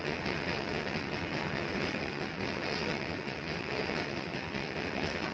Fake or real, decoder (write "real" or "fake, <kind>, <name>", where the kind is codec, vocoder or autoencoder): fake, vocoder, WaveNeXt